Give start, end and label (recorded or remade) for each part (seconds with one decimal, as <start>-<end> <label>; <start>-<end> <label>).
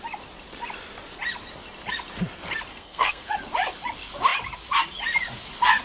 0.0-2.7 recorded; 2.7-3.3 remade; 3.3-5.8 recorded